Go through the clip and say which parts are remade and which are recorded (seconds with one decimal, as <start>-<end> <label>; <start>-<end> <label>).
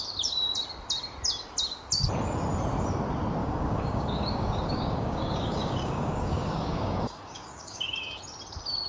0.0-3.4 recorded; 3.4-8.2 remade; 8.2-8.9 recorded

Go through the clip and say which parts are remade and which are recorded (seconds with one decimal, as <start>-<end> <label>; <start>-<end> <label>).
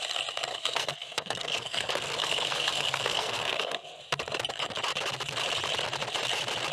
0.0-0.5 recorded; 0.5-4.0 remade; 4.0-6.7 recorded